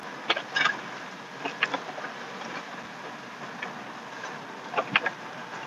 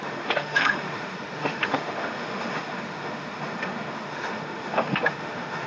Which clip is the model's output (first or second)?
second